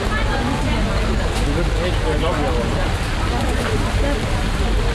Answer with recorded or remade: recorded